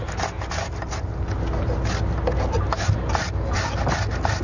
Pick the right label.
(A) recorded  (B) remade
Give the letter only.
A